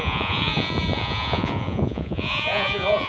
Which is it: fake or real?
fake